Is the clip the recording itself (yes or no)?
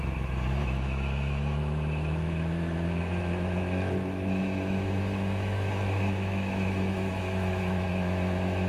no